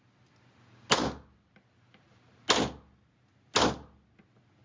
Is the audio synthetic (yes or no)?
no